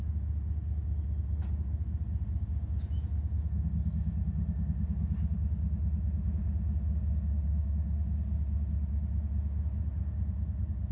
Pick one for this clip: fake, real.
real